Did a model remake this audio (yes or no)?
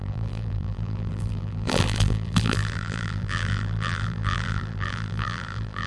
yes